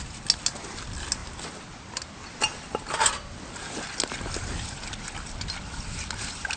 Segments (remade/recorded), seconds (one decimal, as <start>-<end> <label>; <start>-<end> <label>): 0.0-6.6 recorded